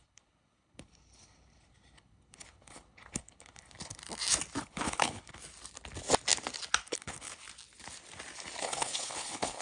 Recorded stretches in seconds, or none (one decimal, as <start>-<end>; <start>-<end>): 4.0-4.6; 5.4-6.9; 7.4-8.6